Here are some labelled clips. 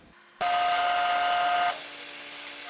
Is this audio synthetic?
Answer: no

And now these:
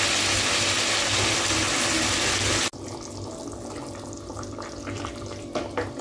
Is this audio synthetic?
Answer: no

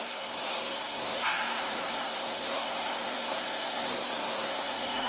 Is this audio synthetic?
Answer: yes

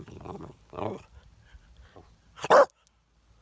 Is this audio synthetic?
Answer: no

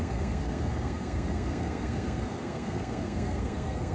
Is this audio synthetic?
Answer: yes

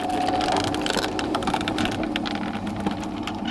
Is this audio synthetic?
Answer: no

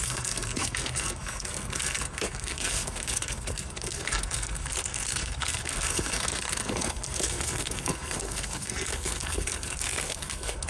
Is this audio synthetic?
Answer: yes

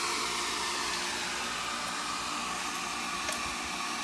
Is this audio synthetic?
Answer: no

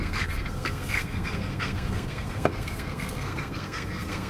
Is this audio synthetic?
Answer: yes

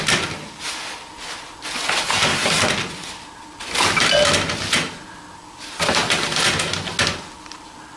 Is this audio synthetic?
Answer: no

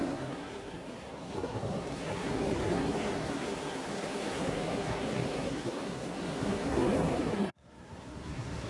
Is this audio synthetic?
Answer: yes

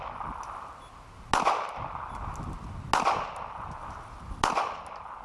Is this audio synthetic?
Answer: no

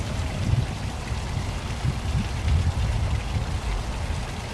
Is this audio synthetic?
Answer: no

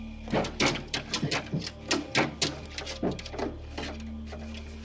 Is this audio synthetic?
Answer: no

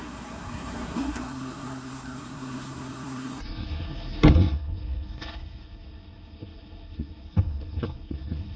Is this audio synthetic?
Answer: yes